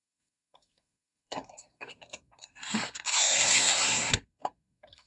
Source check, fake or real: fake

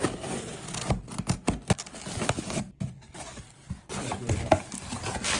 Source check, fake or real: real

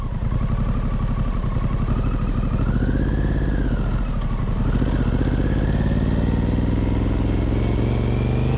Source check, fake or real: real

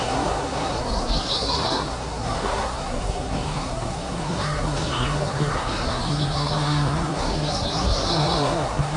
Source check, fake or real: fake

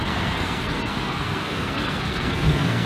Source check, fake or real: fake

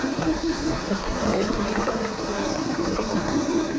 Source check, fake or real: fake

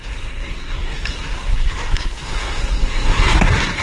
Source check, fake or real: fake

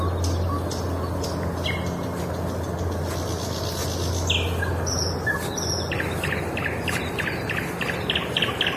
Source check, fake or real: real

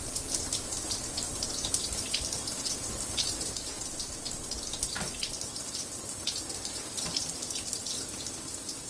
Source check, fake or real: real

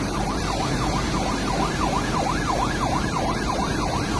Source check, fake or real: real